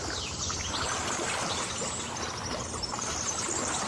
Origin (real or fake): real